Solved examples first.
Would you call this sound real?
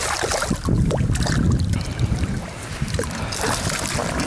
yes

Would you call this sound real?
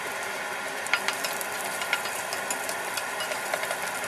yes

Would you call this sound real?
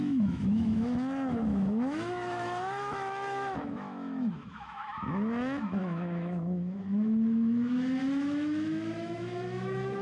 no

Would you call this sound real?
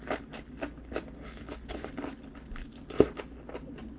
yes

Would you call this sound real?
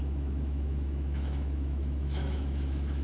no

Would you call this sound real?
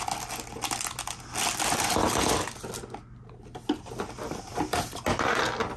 yes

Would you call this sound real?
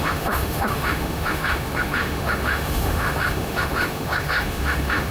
no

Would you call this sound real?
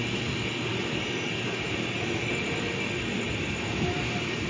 yes